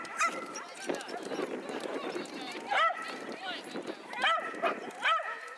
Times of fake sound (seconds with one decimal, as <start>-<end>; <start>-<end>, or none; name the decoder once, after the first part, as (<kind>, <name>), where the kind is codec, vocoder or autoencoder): 1.9-3.4 (vocoder, BigVGAN v2)